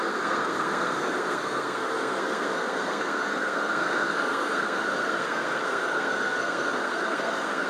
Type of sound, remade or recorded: remade